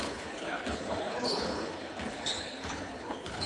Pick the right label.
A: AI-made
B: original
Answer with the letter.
A